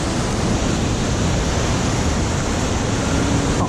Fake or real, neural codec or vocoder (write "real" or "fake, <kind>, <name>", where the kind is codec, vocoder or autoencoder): real